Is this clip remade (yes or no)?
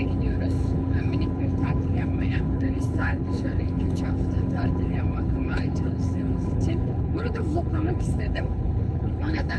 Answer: yes